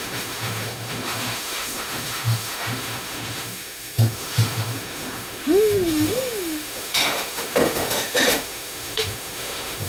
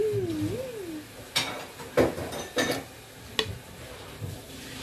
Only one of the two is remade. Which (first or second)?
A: first